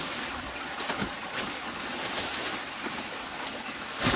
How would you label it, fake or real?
real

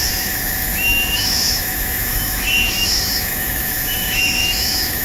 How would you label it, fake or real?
fake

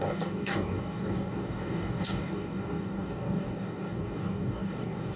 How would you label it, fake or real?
fake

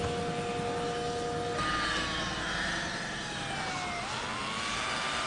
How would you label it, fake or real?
real